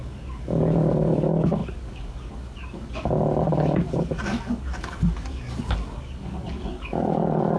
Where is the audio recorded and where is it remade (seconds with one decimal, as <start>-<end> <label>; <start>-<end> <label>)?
0.0-7.6 remade